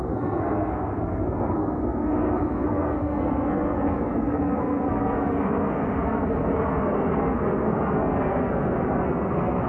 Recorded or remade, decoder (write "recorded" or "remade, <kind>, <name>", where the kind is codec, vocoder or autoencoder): remade, codec, SNAC